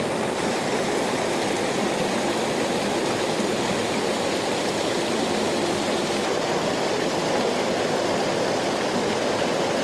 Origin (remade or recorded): recorded